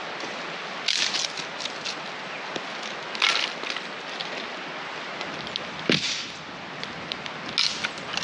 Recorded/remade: recorded